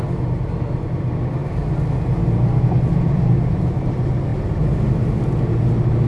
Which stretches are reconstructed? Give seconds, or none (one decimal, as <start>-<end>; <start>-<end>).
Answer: none